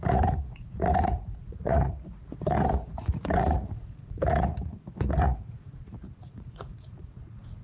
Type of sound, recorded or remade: remade